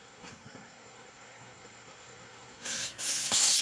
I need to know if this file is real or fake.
fake